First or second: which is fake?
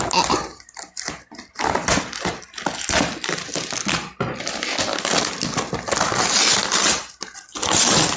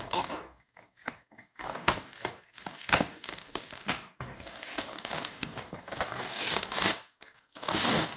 second